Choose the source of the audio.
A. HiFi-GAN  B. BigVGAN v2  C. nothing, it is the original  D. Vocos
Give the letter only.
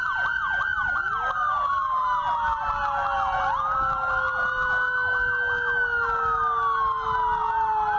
C